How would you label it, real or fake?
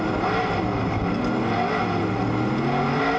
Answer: real